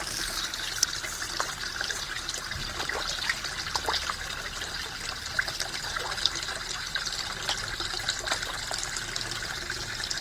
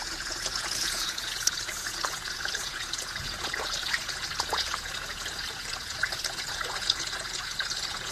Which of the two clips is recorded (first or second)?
first